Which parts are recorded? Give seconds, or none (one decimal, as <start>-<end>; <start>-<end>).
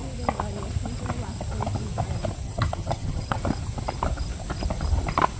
0.0-2.4; 3.4-5.4